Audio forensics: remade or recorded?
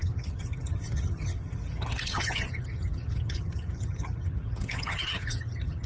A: remade